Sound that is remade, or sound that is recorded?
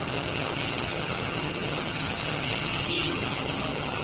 remade